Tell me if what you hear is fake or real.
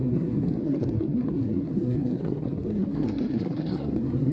fake